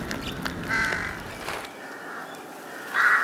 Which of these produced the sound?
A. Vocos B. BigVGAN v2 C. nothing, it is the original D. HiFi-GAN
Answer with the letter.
C